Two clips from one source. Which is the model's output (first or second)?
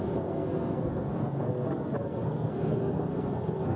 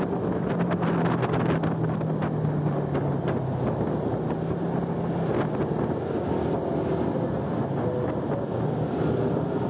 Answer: first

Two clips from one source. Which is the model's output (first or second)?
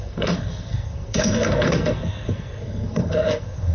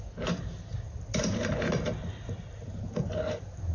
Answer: first